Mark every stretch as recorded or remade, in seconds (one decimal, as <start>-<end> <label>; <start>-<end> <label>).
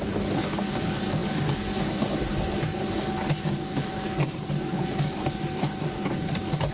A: 0.0-6.7 remade